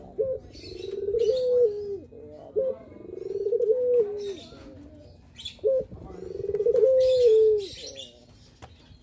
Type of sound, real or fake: real